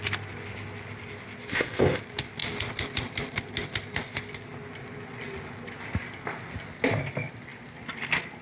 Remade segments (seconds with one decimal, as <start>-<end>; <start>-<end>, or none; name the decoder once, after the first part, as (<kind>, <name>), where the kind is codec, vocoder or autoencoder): 1.5-2.0 (codec, ZipCodec)